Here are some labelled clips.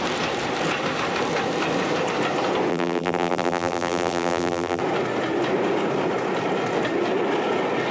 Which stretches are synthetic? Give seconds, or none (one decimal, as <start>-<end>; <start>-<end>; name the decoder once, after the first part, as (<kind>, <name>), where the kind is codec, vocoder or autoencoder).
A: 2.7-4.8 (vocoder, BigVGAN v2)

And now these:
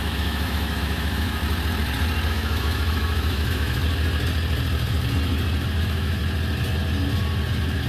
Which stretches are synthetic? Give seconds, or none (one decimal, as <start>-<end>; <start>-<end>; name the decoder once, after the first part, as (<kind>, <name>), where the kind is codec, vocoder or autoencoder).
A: 0.0-1.4 (autoencoder, DAC-VAE); 2.3-3.8; 5.8-6.2

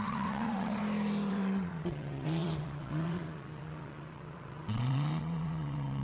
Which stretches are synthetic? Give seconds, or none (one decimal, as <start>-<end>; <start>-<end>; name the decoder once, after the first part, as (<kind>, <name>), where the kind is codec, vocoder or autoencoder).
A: 0.0-0.8 (vocoder, WaveNeXt); 1.3-6.0

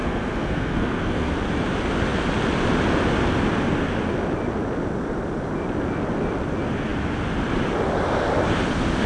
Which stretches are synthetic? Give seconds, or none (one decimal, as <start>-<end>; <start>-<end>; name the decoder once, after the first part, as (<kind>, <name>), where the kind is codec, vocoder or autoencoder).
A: 0.0-1.3 (codec, SNAC)